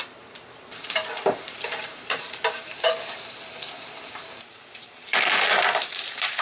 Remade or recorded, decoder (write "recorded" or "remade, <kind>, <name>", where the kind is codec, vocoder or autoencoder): remade, vocoder, BigVGAN v2